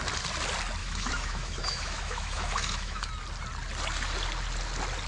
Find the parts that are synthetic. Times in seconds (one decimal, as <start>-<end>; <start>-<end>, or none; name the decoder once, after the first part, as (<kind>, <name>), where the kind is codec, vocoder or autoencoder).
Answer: 0.8-3.1 (autoencoder, DAC-VAE)